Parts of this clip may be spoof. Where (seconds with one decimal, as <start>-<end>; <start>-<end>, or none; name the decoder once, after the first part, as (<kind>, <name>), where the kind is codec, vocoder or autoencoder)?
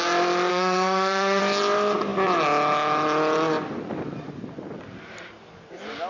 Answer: 0.5-1.4 (autoencoder, DAC-VAE)